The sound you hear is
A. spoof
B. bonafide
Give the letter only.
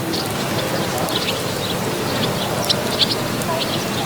B